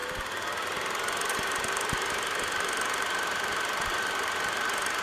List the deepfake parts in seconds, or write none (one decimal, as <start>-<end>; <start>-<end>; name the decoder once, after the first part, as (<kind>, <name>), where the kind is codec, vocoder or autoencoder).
1.3-5.0 (vocoder, BigVGAN v2)